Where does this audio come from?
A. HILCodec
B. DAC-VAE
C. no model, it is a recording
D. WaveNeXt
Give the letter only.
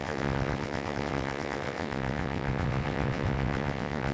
D